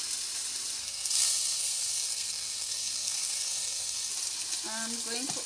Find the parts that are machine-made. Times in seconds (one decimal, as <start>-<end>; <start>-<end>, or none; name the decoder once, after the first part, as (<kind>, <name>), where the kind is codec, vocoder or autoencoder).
0.8-4.1 (codec, SNAC)